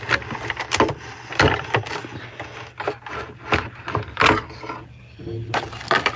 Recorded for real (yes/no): yes